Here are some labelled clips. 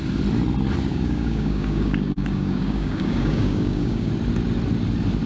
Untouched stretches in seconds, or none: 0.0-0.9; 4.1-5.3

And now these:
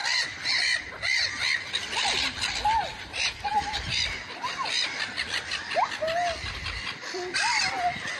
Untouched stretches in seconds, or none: 0.0-8.2

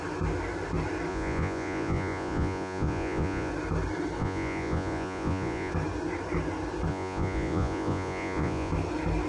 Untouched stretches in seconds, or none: 0.0-1.1; 3.5-4.2; 5.7-6.9; 8.7-9.3

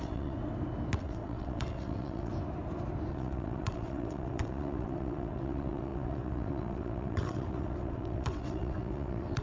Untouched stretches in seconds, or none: 0.4-1.0; 2.3-3.1